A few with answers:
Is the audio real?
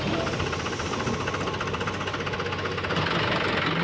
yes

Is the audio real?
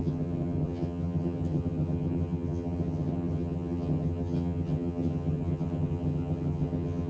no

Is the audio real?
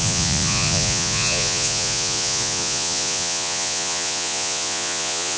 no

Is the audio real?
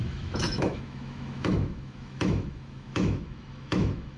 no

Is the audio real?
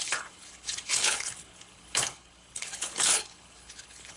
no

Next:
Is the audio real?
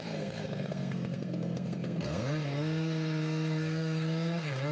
no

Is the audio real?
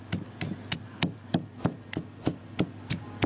yes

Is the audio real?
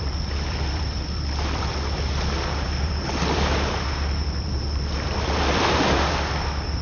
no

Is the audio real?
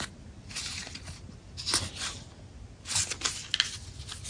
yes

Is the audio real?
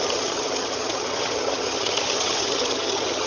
no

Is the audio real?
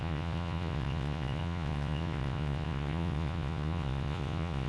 no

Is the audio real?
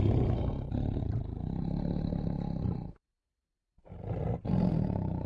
yes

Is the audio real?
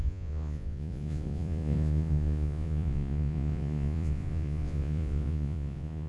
no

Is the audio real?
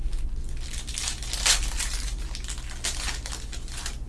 yes